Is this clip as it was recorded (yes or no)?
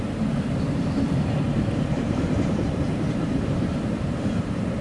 no